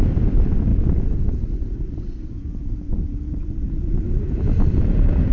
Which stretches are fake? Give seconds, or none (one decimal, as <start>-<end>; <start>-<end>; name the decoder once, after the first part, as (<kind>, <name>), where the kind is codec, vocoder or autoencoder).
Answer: none

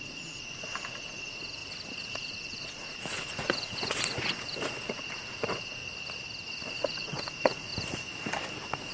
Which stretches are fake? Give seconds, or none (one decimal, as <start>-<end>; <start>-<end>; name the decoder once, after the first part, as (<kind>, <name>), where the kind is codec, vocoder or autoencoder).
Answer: 0.0-1.6 (vocoder, Vocos); 2.1-5.8; 6.7-7.7; 8.5-8.9